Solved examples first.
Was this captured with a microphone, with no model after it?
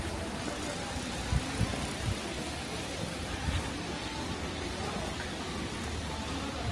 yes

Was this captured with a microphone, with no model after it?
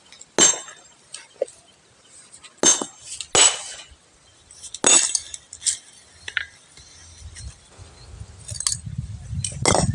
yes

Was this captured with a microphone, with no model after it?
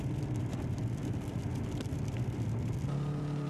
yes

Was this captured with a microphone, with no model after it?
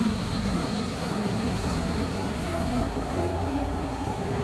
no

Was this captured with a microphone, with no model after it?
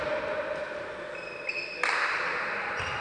yes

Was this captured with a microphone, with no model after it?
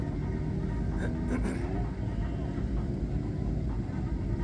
yes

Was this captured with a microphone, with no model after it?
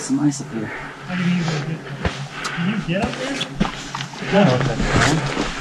yes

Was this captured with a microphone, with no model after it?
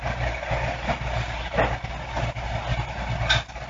yes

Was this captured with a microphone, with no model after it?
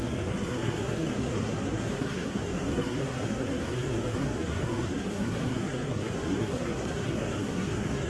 no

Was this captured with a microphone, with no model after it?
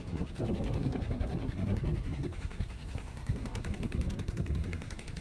no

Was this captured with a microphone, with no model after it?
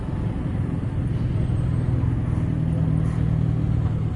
yes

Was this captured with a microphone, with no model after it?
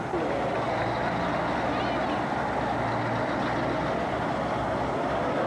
yes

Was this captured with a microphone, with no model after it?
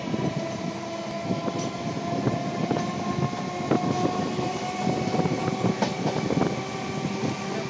yes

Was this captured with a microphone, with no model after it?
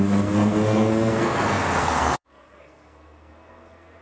no